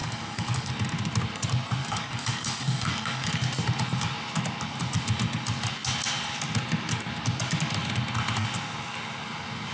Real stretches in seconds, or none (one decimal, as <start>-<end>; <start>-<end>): 0.7-1.8; 3.3-9.7